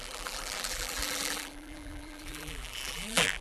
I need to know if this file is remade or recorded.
remade